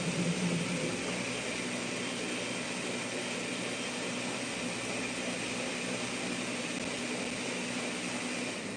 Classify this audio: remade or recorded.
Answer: recorded